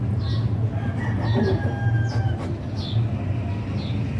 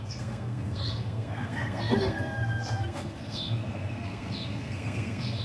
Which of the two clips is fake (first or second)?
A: second